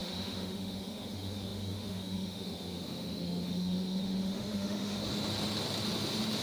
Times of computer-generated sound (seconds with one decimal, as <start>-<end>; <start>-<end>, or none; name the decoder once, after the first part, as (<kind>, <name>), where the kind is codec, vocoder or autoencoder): 0.0-5.0 (autoencoder, DAC-VAE)